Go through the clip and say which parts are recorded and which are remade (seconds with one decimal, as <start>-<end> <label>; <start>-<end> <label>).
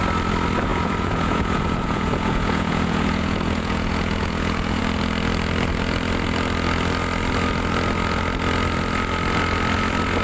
0.0-0.7 recorded; 0.7-4.8 remade; 4.8-10.2 recorded